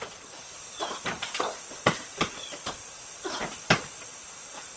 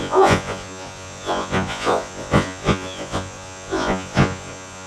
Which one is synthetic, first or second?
second